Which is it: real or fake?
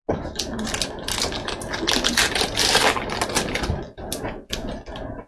real